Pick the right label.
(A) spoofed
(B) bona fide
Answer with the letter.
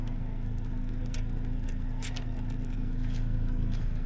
A